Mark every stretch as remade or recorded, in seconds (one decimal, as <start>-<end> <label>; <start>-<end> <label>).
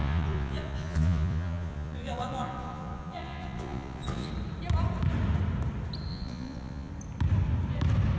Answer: 0.0-4.3 remade; 4.3-6.1 recorded; 6.1-6.9 remade; 6.9-8.2 recorded